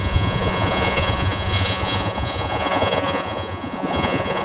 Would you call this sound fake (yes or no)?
yes